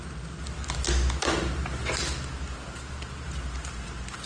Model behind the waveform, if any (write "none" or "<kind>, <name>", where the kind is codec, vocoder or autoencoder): none